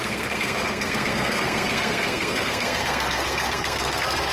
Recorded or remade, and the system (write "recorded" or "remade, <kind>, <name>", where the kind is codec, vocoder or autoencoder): remade, codec, SNAC